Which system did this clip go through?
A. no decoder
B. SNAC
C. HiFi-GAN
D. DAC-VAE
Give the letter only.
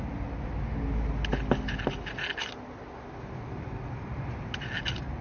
A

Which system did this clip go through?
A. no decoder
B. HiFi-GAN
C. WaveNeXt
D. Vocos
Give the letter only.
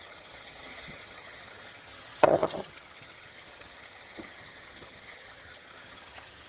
B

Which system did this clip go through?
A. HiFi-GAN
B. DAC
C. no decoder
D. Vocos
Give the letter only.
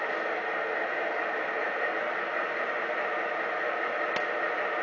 C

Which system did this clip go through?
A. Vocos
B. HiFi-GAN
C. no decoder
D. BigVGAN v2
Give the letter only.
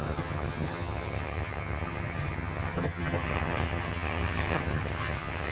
B